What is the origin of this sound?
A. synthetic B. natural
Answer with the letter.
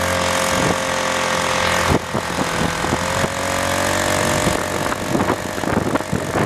B